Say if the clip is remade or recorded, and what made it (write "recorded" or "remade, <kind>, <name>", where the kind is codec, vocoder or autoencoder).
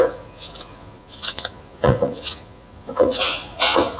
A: remade, vocoder, Vocos